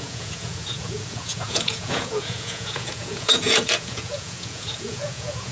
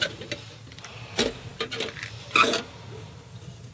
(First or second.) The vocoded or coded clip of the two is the first